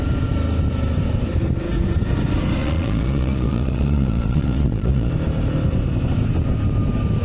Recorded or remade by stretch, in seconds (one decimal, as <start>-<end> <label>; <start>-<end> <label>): 0.0-2.6 recorded; 2.6-5.1 remade; 5.1-7.2 recorded